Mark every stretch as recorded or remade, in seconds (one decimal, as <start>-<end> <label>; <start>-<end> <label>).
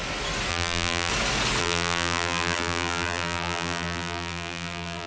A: 0.0-0.5 recorded; 0.5-1.1 remade; 1.1-1.6 recorded; 1.6-5.1 remade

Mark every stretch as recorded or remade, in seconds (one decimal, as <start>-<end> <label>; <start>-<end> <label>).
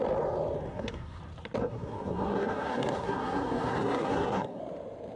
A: 0.0-0.7 recorded; 0.7-1.2 remade; 1.2-1.6 recorded; 1.6-4.6 remade; 4.6-5.2 recorded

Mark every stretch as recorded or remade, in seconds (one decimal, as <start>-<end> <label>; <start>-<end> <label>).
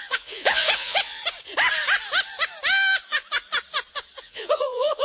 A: 0.0-1.2 remade; 1.2-4.2 recorded; 4.2-5.0 remade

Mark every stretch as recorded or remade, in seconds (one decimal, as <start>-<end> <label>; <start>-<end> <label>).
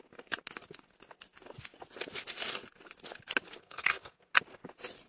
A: 0.0-3.6 recorded; 3.6-4.3 remade; 4.3-5.1 recorded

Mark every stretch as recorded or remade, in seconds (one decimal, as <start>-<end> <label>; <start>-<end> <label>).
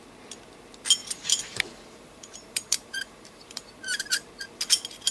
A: 0.0-1.0 recorded; 1.0-4.1 remade; 4.1-5.1 recorded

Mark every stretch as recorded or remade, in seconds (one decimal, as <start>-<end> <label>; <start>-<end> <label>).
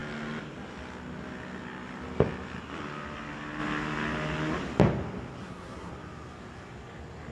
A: 0.0-5.4 recorded; 5.4-5.9 remade; 5.9-7.3 recorded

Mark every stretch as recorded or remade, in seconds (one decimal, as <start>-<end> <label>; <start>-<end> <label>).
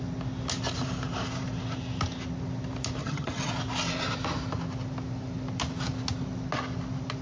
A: 0.0-3.0 recorded; 3.0-3.5 remade; 3.5-7.2 recorded